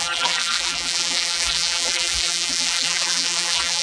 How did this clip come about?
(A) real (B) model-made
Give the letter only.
B